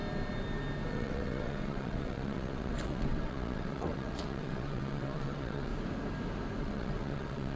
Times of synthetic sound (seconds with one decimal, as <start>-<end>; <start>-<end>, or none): 0.9-5.7; 6.6-7.6